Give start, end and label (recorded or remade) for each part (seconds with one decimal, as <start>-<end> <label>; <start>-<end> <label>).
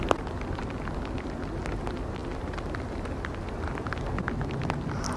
0.0-5.2 recorded